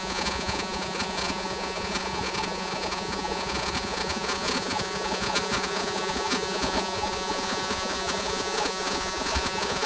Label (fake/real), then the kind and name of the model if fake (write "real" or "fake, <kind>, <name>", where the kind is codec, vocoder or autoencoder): fake, vocoder, Vocos